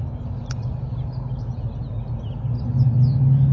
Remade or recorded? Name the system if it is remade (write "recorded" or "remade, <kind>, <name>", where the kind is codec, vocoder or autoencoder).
recorded